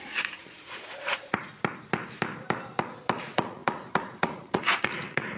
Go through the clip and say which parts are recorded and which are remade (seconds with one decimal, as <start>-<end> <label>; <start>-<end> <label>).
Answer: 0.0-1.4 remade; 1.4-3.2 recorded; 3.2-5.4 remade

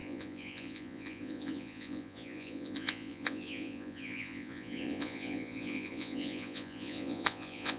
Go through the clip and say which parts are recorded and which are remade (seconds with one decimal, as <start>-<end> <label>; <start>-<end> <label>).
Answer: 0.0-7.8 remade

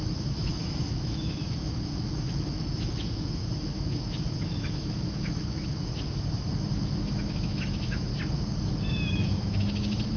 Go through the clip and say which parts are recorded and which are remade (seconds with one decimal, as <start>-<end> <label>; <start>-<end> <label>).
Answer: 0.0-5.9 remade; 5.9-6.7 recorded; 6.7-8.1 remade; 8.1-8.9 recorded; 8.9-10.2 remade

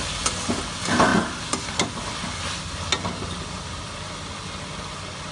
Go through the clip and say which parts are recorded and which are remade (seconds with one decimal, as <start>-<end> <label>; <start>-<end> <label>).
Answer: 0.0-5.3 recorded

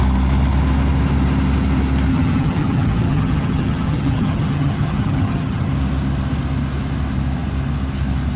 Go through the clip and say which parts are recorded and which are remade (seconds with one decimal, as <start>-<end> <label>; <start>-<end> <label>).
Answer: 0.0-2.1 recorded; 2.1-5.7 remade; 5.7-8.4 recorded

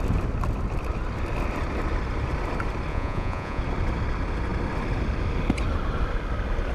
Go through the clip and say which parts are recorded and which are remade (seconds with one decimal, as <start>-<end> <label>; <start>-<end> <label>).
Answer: 0.0-2.9 recorded; 2.9-3.6 remade; 3.6-6.7 recorded

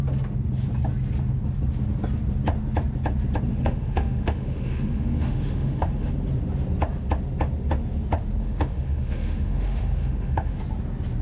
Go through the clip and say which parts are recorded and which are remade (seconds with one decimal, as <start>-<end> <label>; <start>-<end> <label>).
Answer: 0.0-3.5 recorded; 3.5-6.1 remade; 6.1-8.4 recorded; 8.4-10.6 remade; 10.6-11.2 recorded

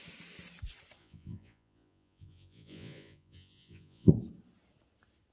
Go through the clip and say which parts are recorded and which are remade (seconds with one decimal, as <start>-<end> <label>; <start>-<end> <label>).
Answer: 0.0-1.0 recorded; 1.0-4.1 remade; 4.1-5.3 recorded